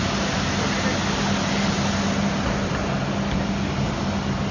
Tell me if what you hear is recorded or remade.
recorded